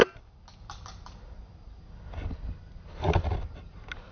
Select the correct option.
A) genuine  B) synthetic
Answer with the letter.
A